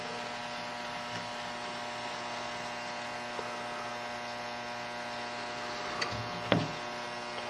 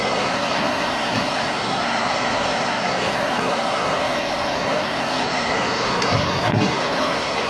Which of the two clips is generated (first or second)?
second